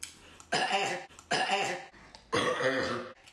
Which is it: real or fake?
real